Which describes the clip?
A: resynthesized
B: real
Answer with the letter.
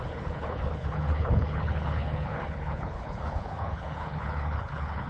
A